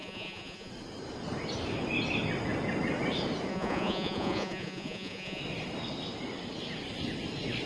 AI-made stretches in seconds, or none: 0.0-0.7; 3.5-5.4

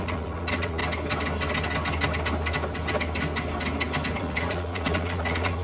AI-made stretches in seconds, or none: 0.0-0.8; 4.2-5.6